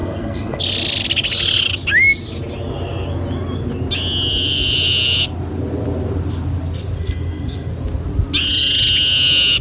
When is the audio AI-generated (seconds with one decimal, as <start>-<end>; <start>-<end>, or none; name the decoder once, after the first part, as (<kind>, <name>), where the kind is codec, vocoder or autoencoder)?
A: 0.0-0.6 (codec, SNAC); 7.0-7.7

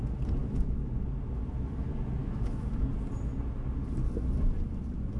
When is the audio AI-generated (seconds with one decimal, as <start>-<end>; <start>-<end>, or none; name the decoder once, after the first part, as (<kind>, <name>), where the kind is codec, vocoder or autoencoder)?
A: 0.4-0.9 (autoencoder, DAC-VAE); 2.2-2.9

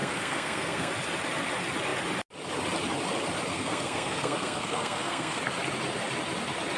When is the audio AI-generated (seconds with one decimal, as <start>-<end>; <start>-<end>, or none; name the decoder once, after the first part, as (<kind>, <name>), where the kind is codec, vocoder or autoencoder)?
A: 0.0-0.9 (codec, SNAC); 3.5-5.4